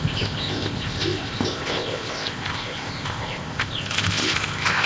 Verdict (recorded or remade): remade